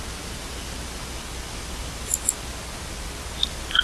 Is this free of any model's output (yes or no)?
yes